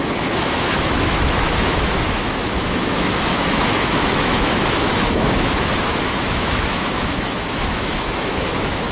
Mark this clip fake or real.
fake